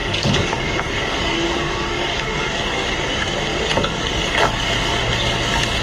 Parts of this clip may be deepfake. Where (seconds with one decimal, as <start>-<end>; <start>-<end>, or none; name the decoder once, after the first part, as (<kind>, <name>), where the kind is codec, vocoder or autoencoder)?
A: 0.0-2.9 (codec, DAC); 3.5-5.0